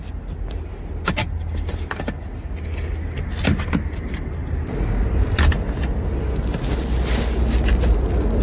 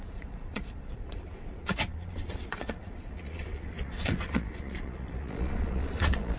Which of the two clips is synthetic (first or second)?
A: second